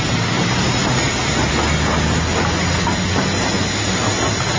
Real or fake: real